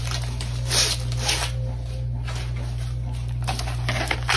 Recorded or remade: recorded